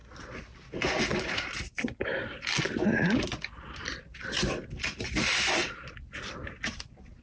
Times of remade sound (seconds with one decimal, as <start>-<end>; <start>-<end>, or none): none